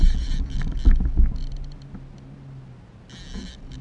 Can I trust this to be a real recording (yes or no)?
yes